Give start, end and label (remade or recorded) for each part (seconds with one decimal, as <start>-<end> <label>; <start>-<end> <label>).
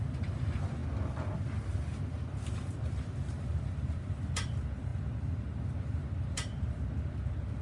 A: 0.0-0.8 remade; 0.8-2.5 recorded; 2.5-7.6 remade